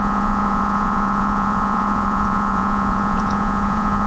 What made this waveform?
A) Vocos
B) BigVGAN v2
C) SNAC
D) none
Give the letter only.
A